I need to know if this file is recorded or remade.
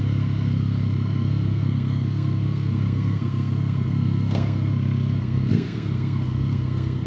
remade